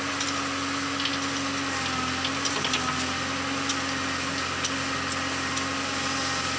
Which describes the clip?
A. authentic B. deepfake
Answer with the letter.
A